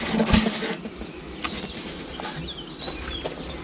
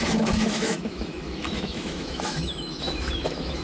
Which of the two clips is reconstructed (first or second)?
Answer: second